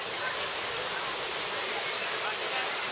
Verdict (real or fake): real